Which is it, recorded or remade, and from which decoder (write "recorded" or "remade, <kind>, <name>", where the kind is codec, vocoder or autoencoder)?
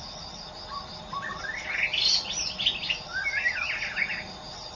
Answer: recorded